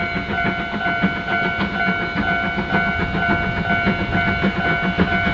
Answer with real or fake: real